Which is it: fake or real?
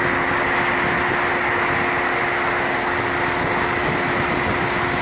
real